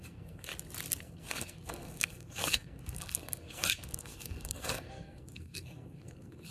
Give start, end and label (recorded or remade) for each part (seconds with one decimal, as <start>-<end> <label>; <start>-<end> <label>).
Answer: 0.0-0.5 remade; 0.5-1.0 recorded; 1.0-6.5 remade